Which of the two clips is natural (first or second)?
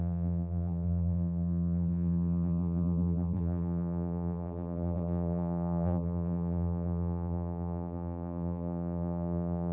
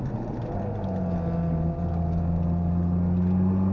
second